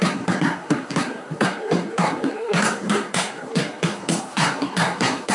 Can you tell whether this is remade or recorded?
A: remade